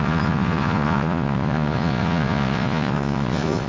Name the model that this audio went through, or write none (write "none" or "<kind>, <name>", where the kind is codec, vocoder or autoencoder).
vocoder, Vocos